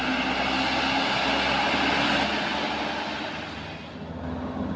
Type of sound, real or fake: real